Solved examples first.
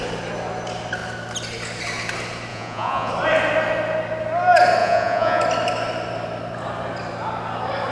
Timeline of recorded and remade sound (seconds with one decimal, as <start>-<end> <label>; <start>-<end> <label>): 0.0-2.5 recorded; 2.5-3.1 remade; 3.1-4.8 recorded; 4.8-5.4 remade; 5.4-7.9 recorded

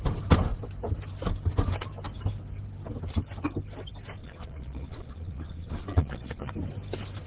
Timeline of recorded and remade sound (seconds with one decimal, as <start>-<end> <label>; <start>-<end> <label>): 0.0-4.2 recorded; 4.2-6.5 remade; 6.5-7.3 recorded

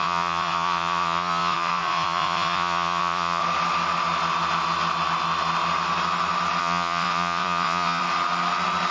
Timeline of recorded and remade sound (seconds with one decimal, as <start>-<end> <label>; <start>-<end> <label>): 0.0-3.4 remade; 3.4-6.6 recorded; 6.6-8.0 remade; 8.0-8.9 recorded

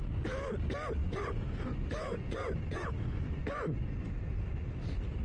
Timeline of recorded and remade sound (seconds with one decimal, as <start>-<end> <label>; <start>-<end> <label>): 0.0-1.0 recorded; 1.0-4.1 remade; 4.1-5.2 recorded